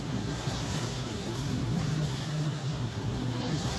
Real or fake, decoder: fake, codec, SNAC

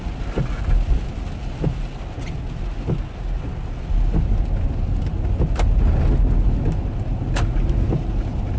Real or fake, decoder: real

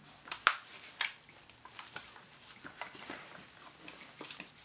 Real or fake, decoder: real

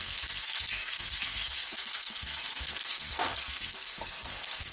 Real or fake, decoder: fake, codec, SNAC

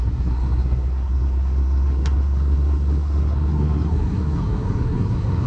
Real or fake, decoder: fake, codec, SNAC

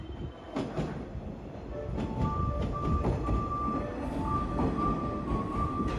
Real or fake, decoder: real